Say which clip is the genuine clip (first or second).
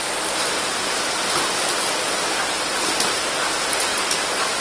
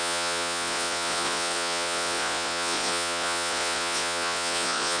first